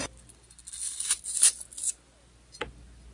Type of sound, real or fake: real